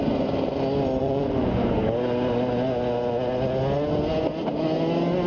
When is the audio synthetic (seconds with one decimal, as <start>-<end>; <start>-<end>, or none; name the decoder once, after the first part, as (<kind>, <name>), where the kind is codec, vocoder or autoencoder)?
1.0-1.8 (vocoder, Vocos)